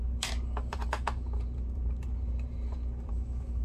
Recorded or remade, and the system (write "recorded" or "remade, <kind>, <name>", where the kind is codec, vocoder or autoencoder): remade, vocoder, BigVGAN v2